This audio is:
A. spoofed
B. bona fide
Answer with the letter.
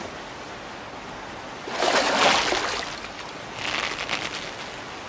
B